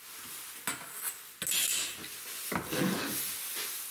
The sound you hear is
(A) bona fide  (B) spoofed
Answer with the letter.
A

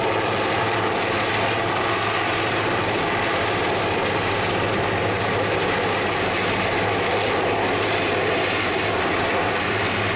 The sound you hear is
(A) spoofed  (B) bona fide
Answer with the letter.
B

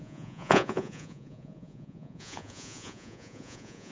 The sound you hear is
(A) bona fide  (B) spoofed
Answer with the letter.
B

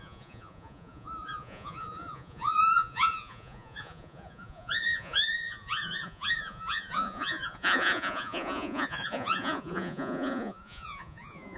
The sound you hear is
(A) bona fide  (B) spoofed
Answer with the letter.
B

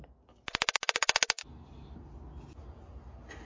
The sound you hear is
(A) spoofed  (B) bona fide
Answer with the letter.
B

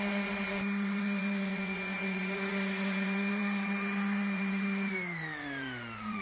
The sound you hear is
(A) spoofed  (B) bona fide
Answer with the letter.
A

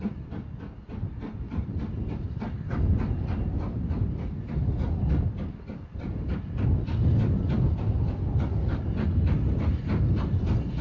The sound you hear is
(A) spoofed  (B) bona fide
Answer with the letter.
B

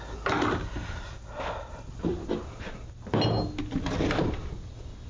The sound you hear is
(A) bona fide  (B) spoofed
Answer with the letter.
A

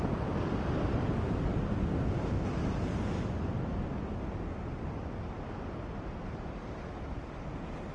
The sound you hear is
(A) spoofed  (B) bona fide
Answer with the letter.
B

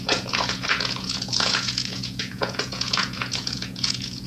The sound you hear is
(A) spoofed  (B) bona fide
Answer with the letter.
A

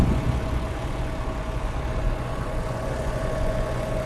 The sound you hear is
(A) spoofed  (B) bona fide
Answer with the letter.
A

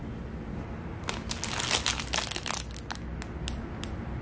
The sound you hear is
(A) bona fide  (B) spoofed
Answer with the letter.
A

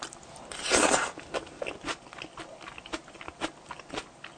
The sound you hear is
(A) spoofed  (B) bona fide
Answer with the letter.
B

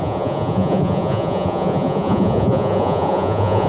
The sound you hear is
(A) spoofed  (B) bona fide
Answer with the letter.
A